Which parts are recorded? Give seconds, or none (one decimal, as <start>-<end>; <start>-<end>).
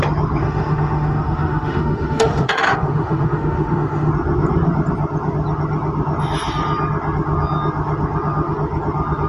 0.0-0.4; 4.1-9.3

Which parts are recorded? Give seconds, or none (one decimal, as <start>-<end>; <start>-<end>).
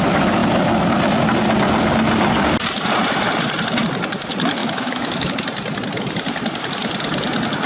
0.0-4.6; 5.3-7.7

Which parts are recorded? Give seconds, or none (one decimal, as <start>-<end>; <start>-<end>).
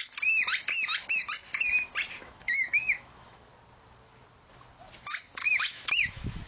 0.0-2.2; 3.5-5.4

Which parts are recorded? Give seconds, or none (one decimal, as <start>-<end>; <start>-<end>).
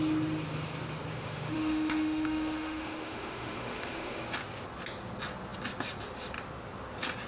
0.0-1.1; 4.2-7.3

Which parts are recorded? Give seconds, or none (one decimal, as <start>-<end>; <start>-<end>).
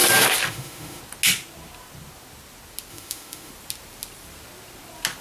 0.0-0.5; 1.0-2.9; 3.5-5.2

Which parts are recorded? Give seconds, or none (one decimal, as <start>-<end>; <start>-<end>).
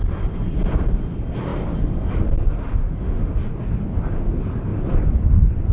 0.0-2.8; 3.3-5.7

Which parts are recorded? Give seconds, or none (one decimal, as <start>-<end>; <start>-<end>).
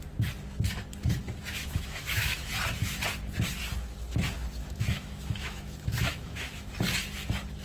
0.0-1.5; 2.5-4.6; 6.7-7.6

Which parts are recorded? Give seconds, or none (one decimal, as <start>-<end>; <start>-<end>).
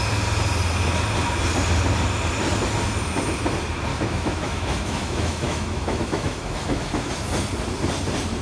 0.0-3.9; 7.1-8.4